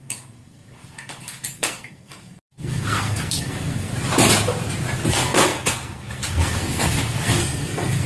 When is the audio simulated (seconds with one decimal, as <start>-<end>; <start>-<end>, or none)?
0.0-3.9; 5.1-8.1